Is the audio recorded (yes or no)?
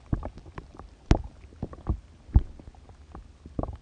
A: yes